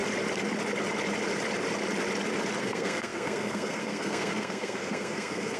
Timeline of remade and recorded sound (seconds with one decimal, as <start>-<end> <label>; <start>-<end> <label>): 0.0-2.6 recorded; 2.6-5.6 remade